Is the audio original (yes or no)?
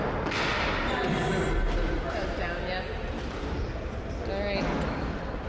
yes